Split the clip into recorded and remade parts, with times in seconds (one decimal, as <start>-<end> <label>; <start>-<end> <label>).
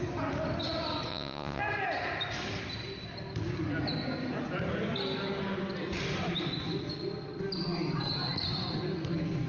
0.0-1.1 recorded; 1.1-1.6 remade; 1.6-9.5 recorded